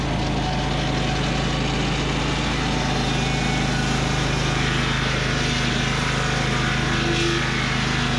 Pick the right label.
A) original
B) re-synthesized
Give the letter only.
A